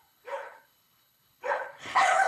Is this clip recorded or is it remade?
remade